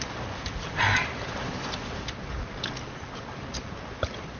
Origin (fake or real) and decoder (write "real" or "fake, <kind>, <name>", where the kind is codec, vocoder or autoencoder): real